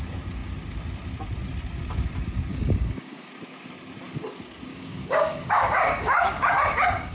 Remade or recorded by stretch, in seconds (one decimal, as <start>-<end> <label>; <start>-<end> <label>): 0.0-2.5 recorded; 2.5-3.3 remade; 3.3-4.7 recorded; 4.7-7.1 remade